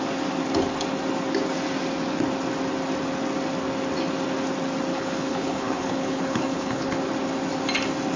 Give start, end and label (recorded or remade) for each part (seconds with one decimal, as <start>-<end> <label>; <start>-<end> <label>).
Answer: 0.0-4.9 recorded; 4.9-7.0 remade; 7.0-8.2 recorded